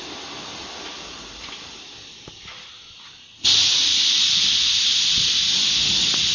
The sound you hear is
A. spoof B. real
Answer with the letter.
B